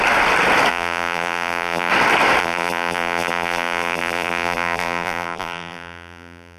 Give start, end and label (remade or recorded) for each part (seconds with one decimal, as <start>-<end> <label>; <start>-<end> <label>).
0.0-0.7 recorded; 0.7-1.9 remade; 1.9-2.4 recorded; 2.4-6.6 remade